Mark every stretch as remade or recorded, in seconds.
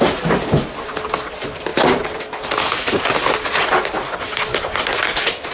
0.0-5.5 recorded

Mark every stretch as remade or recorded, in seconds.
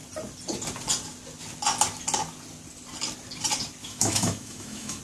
0.0-3.8 recorded; 3.8-5.0 remade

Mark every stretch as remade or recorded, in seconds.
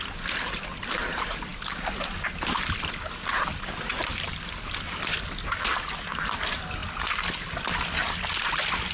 0.0-8.9 recorded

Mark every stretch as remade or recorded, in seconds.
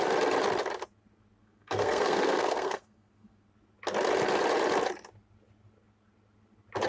0.0-1.4 recorded; 1.4-3.5 remade; 3.5-6.9 recorded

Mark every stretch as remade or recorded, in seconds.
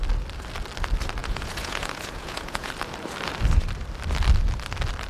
0.0-1.2 recorded; 1.2-2.7 remade; 2.7-5.1 recorded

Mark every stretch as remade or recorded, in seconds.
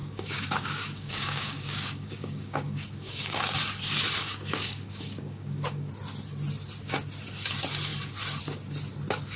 0.0-3.6 remade; 3.6-4.2 recorded; 4.2-5.9 remade; 5.9-9.4 recorded